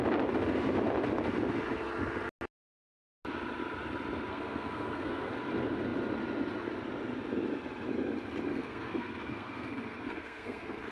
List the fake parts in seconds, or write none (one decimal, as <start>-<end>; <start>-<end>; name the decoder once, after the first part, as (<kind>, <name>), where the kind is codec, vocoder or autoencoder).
4.3-5.3 (codec, SNAC); 8.5-10.9

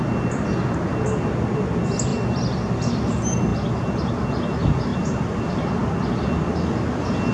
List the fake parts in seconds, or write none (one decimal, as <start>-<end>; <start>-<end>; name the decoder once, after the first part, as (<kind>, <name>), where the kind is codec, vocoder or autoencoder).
none

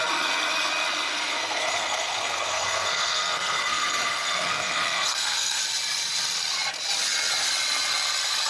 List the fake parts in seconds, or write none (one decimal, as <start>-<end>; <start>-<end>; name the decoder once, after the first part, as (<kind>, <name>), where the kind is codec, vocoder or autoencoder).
1.1-5.6 (codec, SNAC)

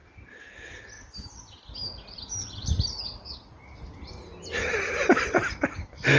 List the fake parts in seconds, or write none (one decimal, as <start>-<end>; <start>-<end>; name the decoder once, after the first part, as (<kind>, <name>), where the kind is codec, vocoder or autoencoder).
none